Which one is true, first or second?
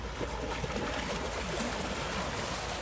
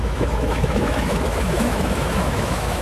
first